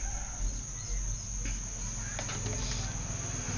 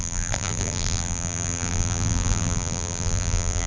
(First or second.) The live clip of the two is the first